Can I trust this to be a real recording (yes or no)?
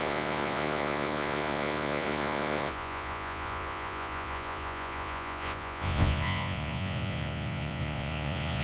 no